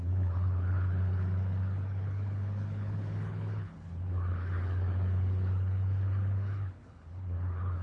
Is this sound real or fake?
fake